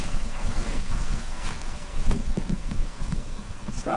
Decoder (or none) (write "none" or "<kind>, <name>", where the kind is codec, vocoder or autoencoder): codec, SNAC